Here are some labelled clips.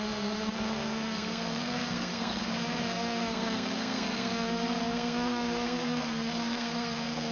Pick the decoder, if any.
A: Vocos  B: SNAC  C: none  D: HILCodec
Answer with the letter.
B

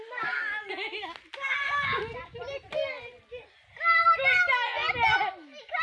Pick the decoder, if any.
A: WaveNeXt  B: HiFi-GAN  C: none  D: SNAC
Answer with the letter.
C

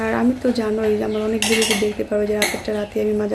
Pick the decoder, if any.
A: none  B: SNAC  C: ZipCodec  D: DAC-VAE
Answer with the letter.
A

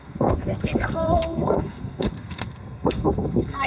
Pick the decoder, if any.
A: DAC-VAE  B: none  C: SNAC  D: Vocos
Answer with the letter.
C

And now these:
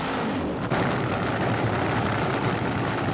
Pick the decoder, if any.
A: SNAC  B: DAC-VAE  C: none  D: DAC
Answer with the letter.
C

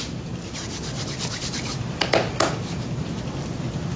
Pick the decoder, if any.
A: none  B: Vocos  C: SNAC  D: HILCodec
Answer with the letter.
A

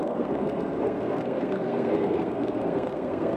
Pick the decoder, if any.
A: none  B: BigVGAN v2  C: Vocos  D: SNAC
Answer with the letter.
D